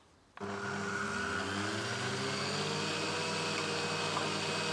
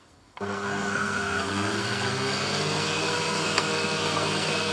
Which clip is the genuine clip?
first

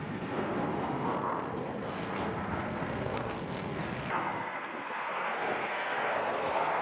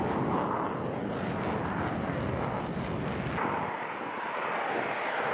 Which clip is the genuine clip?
second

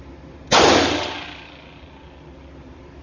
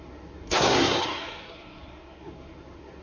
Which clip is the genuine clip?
first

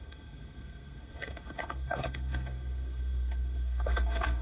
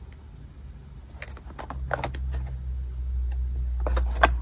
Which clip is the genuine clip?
second